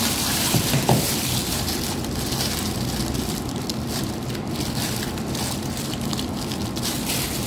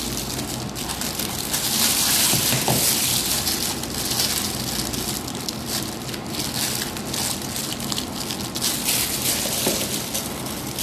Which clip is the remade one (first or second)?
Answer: first